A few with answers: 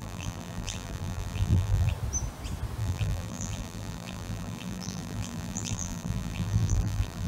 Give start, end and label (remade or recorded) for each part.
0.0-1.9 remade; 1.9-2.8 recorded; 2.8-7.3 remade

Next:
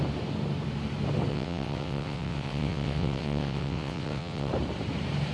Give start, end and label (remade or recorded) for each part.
0.0-1.3 recorded; 1.3-4.5 remade; 4.5-5.3 recorded

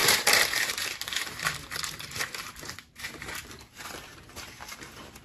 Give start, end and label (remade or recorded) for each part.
0.0-5.2 remade

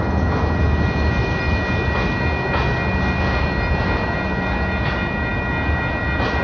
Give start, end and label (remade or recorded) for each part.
0.0-6.4 recorded

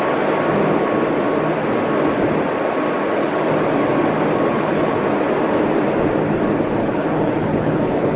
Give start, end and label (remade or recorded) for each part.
0.0-4.5 recorded; 4.5-5.0 remade; 5.0-6.8 recorded; 6.8-8.2 remade

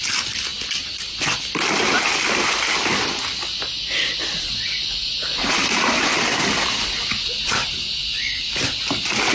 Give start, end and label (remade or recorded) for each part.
0.0-7.6 recorded; 7.6-8.8 remade; 8.8-9.3 recorded

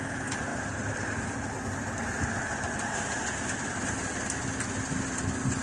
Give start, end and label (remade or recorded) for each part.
0.0-5.6 recorded